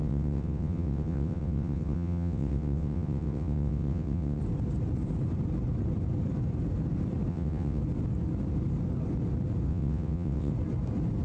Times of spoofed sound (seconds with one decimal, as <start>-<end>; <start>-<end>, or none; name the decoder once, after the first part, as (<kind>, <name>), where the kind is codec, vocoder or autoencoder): 0.0-4.4 (vocoder, WaveNeXt); 7.3-7.8; 9.7-10.5